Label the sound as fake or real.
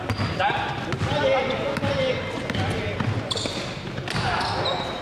real